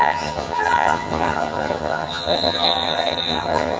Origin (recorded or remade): remade